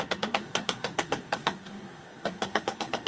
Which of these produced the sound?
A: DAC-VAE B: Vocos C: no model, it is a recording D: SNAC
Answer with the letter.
D